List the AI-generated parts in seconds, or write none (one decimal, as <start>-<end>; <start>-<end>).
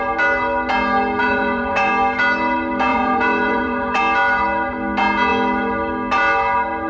1.2-1.9; 2.9-4.0